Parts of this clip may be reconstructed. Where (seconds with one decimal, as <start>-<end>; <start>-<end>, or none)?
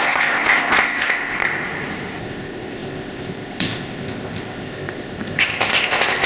0.0-1.4; 2.2-6.3